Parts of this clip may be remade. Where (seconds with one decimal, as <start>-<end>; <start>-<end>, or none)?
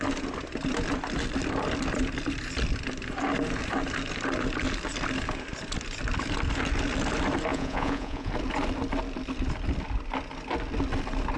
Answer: 7.5-8.3